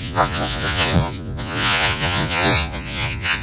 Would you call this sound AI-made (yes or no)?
yes